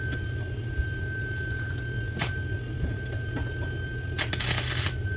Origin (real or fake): real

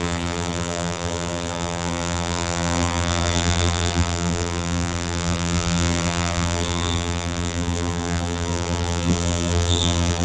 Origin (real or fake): fake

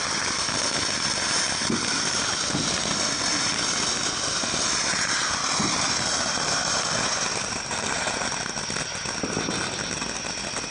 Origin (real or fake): real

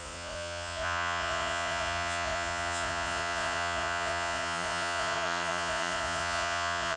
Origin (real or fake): fake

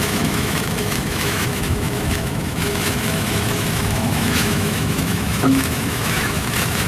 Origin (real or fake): fake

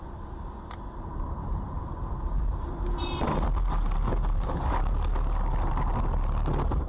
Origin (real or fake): real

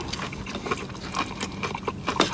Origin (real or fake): real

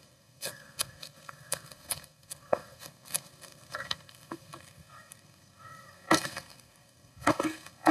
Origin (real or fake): fake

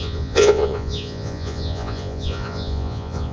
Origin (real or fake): fake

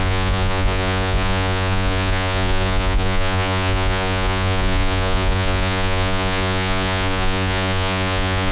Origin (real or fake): fake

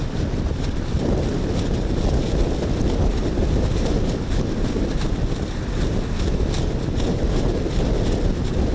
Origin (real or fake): real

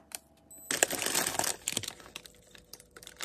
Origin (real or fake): real